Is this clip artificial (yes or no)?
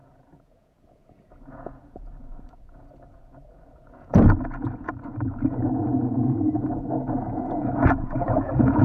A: yes